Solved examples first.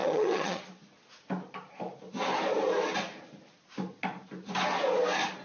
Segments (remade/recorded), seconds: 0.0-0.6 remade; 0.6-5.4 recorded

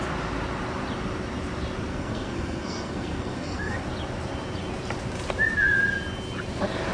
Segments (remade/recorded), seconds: 0.0-1.9 recorded; 1.9-3.8 remade; 3.8-6.9 recorded

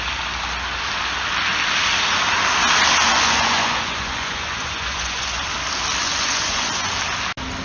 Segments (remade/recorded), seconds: 0.0-3.1 recorded; 3.1-5.4 remade; 5.4-6.0 recorded; 6.0-6.9 remade; 6.9-7.6 recorded

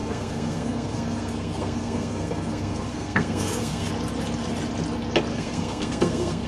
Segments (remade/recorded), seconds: 0.0-3.9 remade; 3.9-5.3 recorded; 5.3-6.5 remade

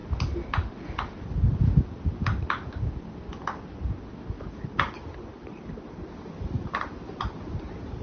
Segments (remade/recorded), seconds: 0.0-8.0 recorded

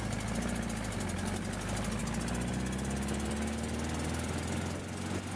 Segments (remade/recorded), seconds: 0.0-5.4 recorded

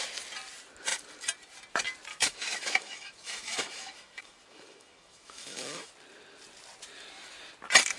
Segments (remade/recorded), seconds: 0.0-2.1 recorded; 2.1-5.9 remade; 5.9-8.0 recorded